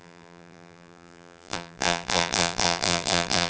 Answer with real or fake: fake